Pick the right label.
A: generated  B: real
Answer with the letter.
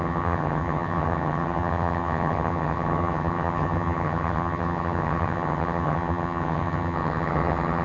A